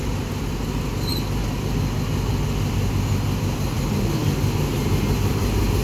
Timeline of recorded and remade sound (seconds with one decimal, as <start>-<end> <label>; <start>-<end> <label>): 0.0-5.8 recorded